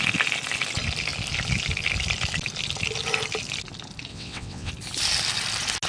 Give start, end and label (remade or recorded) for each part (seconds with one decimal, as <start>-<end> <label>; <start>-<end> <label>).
0.0-4.1 recorded; 4.1-4.7 remade; 4.7-5.9 recorded